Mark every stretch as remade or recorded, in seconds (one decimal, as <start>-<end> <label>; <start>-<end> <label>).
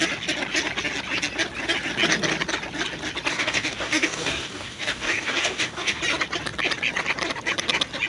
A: 0.0-3.3 recorded; 3.3-6.0 remade; 6.0-8.1 recorded